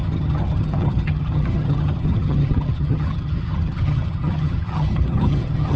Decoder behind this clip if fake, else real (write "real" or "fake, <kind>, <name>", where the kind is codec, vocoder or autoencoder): fake, vocoder, HiFi-GAN